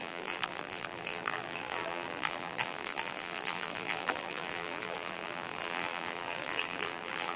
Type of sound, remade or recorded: remade